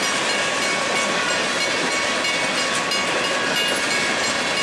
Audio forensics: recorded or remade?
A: recorded